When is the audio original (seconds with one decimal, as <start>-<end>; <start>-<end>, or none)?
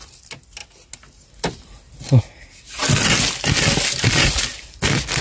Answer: 0.0-5.2